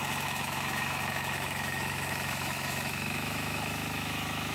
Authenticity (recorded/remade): remade